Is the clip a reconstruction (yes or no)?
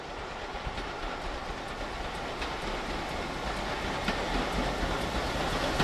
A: no